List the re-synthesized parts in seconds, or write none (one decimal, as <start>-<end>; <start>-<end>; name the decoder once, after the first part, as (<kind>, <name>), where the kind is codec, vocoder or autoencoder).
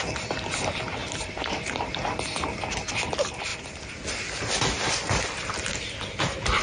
1.0-1.9 (vocoder, BigVGAN v2)